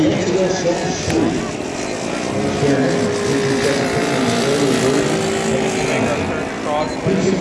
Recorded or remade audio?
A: recorded